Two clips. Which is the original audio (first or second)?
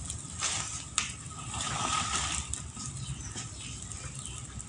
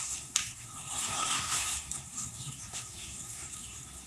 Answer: first